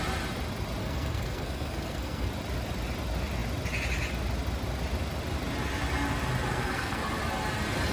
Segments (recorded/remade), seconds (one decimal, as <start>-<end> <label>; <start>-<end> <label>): 0.0-0.8 recorded; 0.8-2.3 remade; 2.3-6.5 recorded; 6.5-7.0 remade; 7.0-7.9 recorded